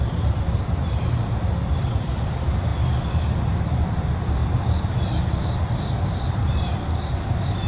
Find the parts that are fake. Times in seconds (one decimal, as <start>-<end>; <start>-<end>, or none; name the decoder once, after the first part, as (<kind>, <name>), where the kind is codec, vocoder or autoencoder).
0.0-2.7 (vocoder, BigVGAN v2); 3.4-4.4; 5.6-7.7